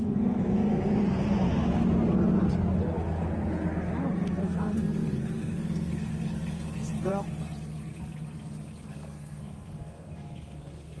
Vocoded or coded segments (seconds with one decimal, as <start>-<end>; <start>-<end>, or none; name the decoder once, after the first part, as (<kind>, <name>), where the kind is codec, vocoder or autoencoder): 0.0-0.9 (codec, SNAC); 4.0-7.1; 8.9-11.0